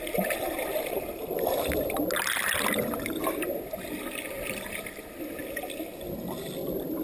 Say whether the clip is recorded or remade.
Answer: recorded